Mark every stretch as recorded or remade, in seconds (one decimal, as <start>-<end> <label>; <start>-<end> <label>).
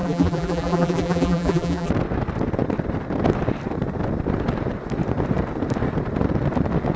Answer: 0.0-1.9 remade; 1.9-7.0 recorded